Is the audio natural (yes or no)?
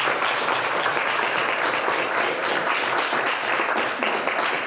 yes